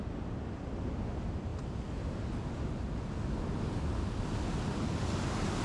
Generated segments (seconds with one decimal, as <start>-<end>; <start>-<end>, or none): none